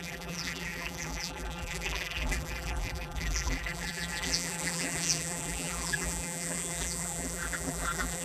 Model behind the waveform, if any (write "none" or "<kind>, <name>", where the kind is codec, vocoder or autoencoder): vocoder, BigVGAN v2